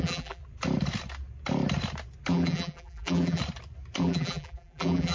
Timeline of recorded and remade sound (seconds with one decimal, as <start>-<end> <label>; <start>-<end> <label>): 0.0-0.4 remade; 0.4-2.3 recorded; 2.3-3.4 remade; 3.4-4.0 recorded; 4.0-5.1 remade